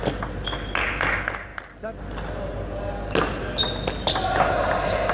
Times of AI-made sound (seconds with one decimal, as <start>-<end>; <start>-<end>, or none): none